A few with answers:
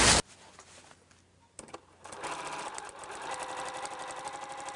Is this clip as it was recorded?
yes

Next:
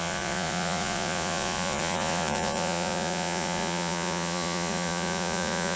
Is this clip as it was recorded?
no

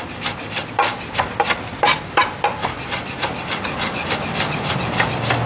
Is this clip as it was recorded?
yes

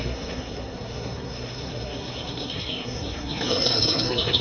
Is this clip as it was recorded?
no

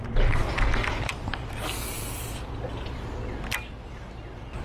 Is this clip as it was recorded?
yes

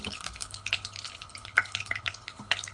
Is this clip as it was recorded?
no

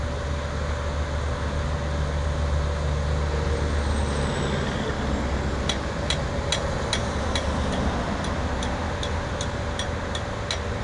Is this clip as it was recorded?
yes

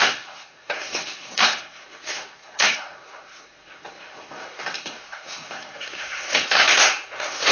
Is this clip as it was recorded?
no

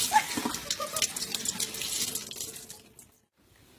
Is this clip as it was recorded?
yes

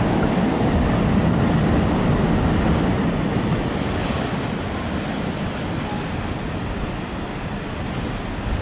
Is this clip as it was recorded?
yes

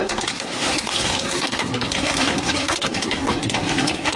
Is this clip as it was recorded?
no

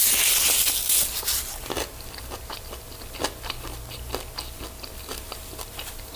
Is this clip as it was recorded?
yes